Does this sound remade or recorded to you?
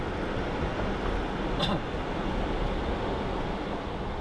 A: recorded